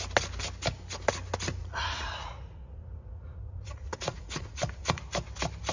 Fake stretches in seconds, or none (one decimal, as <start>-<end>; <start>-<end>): 1.6-5.0